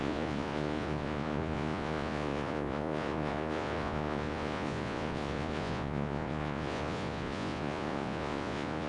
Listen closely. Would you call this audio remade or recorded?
remade